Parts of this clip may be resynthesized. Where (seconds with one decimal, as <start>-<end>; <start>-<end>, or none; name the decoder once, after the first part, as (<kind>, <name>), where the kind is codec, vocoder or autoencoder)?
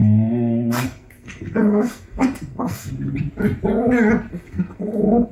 0.0-2.9 (codec, SNAC); 4.3-5.3